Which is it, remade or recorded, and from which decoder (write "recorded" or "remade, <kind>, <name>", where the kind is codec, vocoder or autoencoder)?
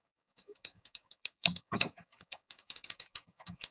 remade, codec, DAC